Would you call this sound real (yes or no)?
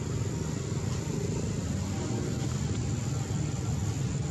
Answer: yes